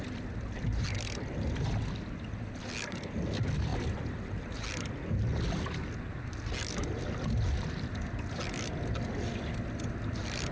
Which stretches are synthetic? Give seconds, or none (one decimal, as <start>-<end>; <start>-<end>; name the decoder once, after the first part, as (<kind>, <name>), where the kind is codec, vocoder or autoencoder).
none